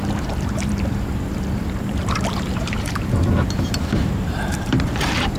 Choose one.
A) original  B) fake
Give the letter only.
B